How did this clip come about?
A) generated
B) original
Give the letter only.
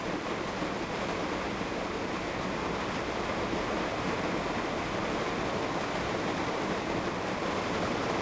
B